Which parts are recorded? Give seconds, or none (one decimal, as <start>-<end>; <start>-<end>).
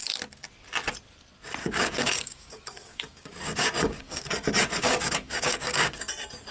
0.0-1.6; 4.3-4.8; 6.1-6.5